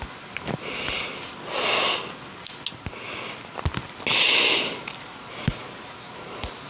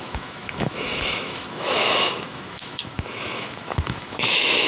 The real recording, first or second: first